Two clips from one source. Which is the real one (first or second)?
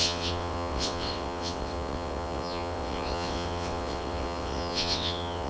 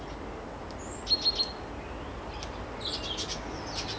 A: second